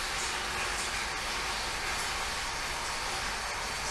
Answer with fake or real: real